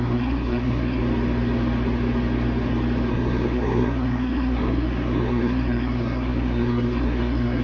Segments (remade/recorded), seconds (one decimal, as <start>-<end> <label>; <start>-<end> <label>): 0.0-1.0 remade; 1.0-3.1 recorded; 3.1-7.6 remade